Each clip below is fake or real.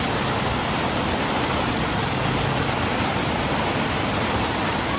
real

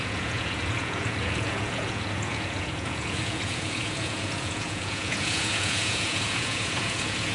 fake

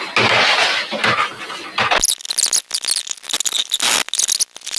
real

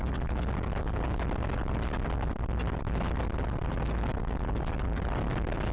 real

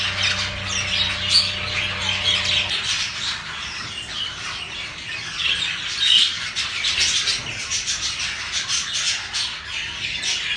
real